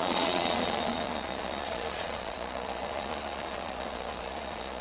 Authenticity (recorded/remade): remade